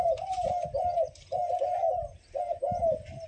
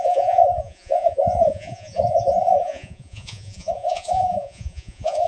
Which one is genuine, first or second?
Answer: first